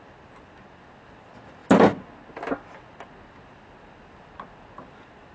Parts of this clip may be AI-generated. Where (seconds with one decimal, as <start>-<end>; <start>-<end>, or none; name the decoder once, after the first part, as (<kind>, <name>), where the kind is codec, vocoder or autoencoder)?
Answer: none